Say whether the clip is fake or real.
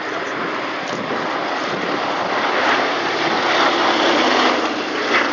real